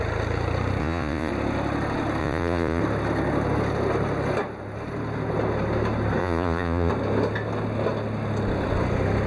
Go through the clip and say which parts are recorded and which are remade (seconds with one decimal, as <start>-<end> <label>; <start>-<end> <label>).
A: 0.0-0.8 recorded; 0.8-1.3 remade; 1.3-2.2 recorded; 2.2-2.8 remade; 2.8-6.2 recorded; 6.2-6.9 remade; 6.9-9.3 recorded